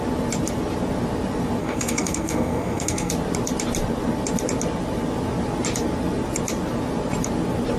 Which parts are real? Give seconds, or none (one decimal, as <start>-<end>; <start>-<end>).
0.0-1.6; 3.1-7.8